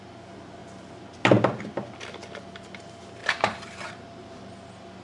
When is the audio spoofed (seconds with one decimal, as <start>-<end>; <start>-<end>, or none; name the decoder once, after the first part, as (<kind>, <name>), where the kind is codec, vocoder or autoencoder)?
3.2-4.5 (vocoder, BigVGAN v2)